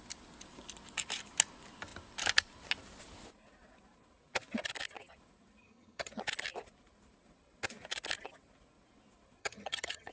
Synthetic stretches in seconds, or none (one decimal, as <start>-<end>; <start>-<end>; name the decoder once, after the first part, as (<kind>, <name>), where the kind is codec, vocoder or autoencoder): 5.6-6.1 (vocoder, HiFi-GAN); 9.4-10.1